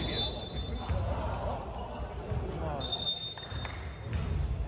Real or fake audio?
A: real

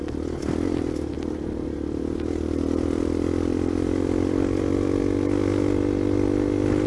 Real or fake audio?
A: real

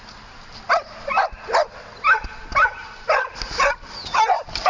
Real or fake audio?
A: real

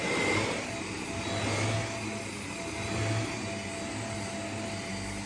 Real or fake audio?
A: real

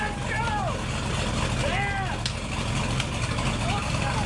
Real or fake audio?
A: real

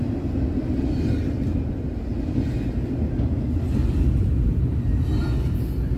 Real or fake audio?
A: real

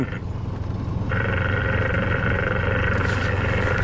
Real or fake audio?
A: real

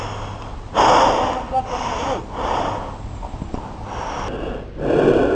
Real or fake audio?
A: real